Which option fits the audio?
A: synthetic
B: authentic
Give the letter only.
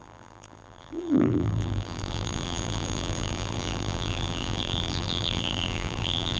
A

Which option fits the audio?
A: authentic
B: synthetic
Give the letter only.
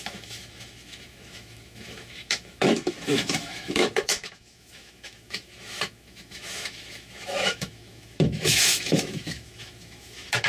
B